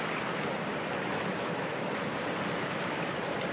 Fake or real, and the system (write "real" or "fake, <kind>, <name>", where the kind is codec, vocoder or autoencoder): real